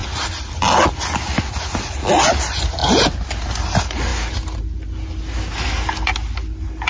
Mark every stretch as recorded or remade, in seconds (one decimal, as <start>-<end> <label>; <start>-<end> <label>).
0.0-2.8 recorded; 2.8-3.3 remade; 3.3-6.9 recorded